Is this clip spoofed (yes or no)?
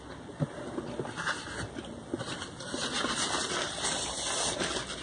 no